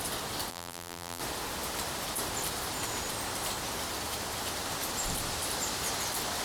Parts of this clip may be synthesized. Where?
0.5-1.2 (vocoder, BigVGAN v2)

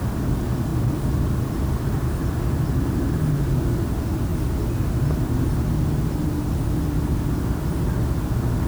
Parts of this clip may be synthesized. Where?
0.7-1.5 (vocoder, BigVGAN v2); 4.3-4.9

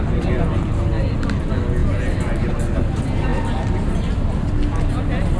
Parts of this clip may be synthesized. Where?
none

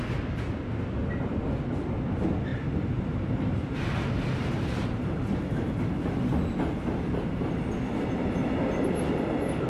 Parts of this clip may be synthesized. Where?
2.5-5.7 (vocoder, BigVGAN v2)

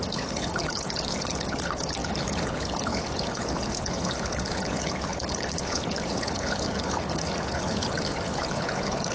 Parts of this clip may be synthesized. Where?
0.0-9.1 (codec, HILCodec)

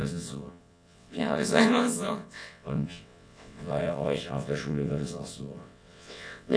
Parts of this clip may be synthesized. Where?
0.0-6.6 (vocoder, WaveNeXt)

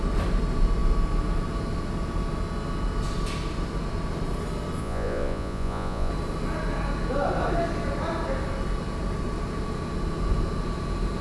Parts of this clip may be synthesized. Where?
4.8-6.1 (vocoder, Vocos)

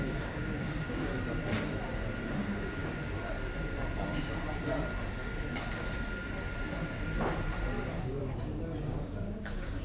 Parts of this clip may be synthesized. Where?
0.0-1.1 (codec, DAC); 2.3-2.8; 7.9-9.8